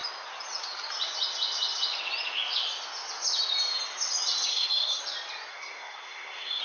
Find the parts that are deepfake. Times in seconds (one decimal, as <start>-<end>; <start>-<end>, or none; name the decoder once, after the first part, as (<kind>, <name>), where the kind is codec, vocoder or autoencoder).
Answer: 4.5-5.0 (codec, SNAC); 5.5-6.6